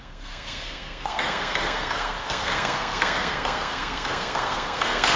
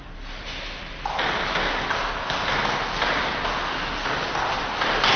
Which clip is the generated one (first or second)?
first